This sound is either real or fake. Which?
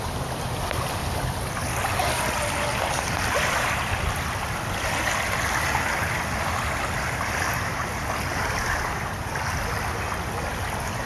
real